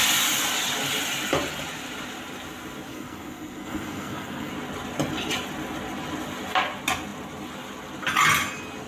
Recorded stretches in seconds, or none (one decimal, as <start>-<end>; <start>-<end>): 0.0-2.9; 4.5-8.9